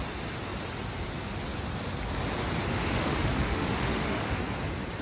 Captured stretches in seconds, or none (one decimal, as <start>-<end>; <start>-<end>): 0.0-2.7; 4.4-5.0